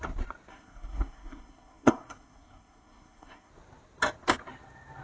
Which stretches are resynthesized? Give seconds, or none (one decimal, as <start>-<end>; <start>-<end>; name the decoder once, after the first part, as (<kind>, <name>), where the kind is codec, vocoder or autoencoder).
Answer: 0.5-3.5 (codec, SNAC)